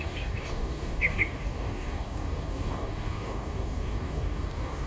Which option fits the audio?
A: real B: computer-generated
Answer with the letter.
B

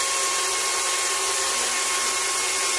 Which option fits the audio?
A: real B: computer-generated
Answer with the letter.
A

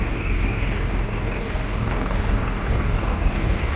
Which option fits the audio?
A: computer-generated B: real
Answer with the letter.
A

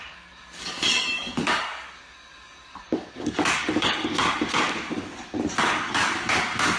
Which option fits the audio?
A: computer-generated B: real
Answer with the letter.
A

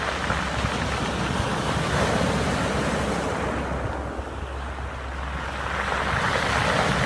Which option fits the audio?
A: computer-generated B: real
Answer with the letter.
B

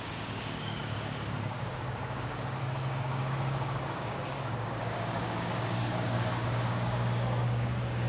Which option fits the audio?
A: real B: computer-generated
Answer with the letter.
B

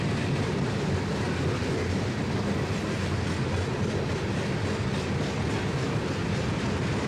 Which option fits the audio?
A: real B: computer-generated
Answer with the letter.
A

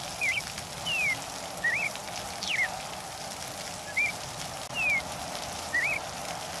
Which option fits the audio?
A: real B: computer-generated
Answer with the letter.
A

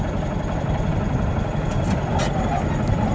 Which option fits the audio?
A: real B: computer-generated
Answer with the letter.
A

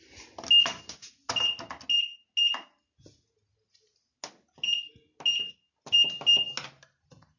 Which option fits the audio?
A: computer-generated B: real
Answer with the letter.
B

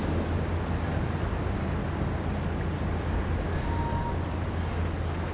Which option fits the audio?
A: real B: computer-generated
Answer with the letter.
A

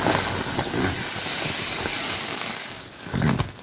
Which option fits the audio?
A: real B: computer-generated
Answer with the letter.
B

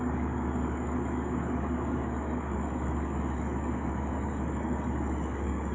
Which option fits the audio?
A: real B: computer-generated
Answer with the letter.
B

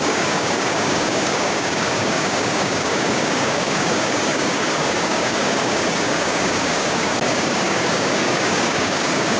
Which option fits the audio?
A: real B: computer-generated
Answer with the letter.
B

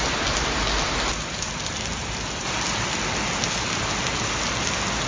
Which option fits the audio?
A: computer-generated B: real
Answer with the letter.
B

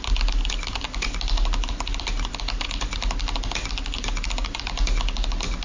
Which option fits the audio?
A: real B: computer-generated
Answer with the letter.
A